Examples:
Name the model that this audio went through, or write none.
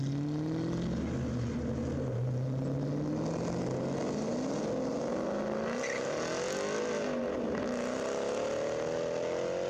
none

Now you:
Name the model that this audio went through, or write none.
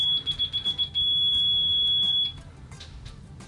vocoder, BigVGAN v2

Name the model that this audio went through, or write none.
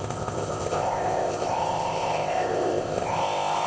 codec, ZipCodec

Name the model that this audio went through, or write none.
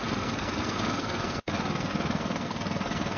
codec, SNAC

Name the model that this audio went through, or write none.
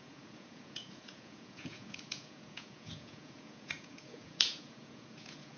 vocoder, Vocos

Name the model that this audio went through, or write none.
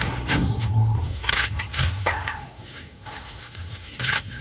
codec, SNAC